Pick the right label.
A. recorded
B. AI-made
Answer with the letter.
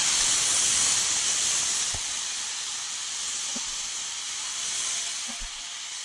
A